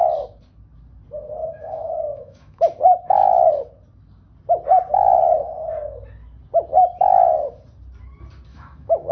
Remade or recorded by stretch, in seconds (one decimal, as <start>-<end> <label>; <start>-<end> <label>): 0.0-1.4 recorded; 1.4-2.6 remade; 2.6-8.5 recorded; 8.5-9.1 remade